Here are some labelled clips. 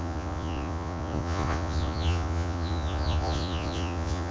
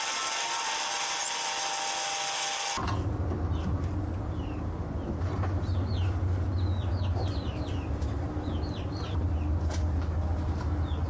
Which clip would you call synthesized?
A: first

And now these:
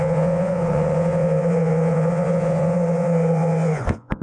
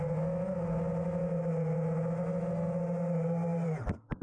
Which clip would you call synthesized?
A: first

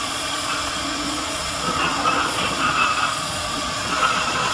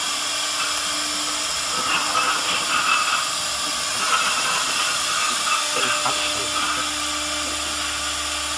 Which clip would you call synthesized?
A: first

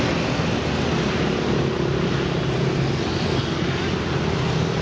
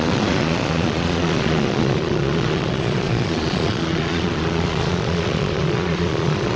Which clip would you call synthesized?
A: second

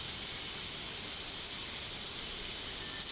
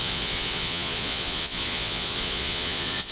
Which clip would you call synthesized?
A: second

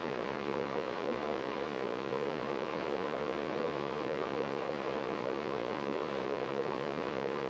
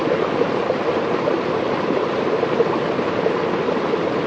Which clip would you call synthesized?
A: first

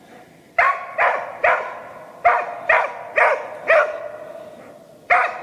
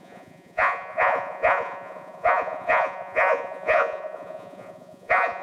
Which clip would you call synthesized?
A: second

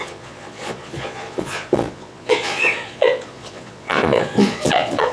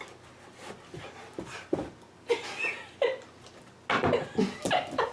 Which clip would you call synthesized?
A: first